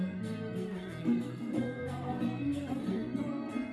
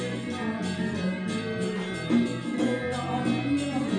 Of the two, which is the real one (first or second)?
second